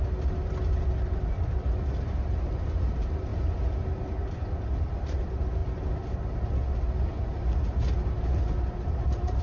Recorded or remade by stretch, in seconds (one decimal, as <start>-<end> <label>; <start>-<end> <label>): 0.0-0.8 recorded; 0.8-3.3 remade; 3.3-4.8 recorded; 4.8-5.6 remade; 5.6-8.6 recorded; 8.6-9.4 remade